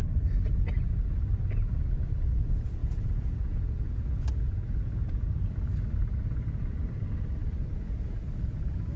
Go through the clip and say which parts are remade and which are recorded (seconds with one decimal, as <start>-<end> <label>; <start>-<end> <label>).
0.0-9.0 recorded